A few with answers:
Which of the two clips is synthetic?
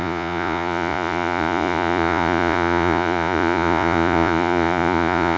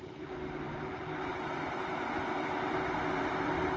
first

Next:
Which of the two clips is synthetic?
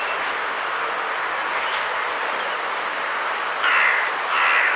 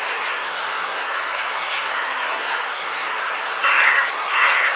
second